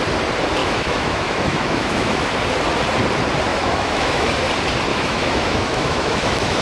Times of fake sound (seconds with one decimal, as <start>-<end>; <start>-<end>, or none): 0.6-2.3; 3.5-4.3; 4.9-6.6